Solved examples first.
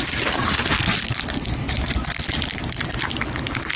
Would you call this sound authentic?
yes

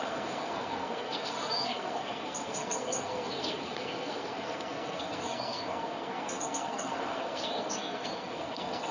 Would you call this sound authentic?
no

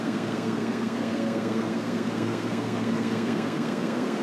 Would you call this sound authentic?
no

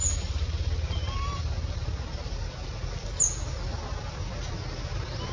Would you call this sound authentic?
yes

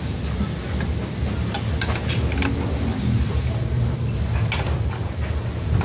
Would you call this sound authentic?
yes